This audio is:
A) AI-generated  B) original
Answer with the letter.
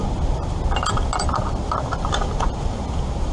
B